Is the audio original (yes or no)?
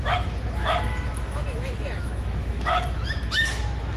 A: no